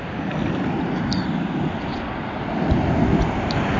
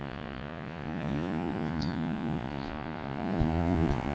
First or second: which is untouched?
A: first